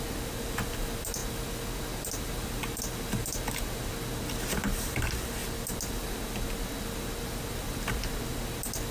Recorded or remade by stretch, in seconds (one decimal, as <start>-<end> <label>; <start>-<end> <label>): 0.0-8.9 recorded